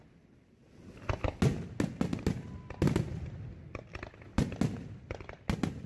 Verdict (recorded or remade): recorded